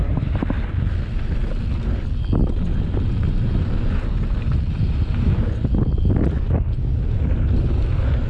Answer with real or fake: real